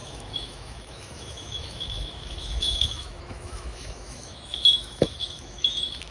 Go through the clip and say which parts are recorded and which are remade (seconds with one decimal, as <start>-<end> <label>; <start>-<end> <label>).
0.0-6.1 remade